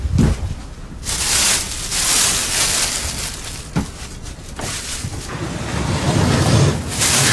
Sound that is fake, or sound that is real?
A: real